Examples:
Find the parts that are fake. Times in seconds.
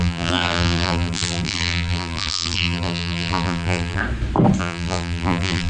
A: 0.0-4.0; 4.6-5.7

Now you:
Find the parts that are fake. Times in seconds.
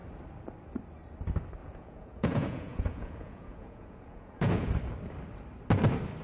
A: 1.6-4.7